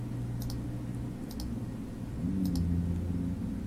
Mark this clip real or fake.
real